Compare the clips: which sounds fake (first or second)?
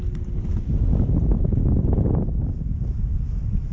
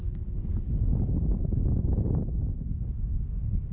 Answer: second